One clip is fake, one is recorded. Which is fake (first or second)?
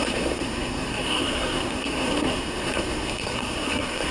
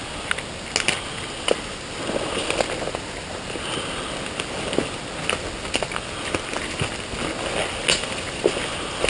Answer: first